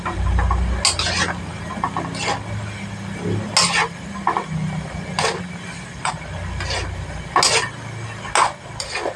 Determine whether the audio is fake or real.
real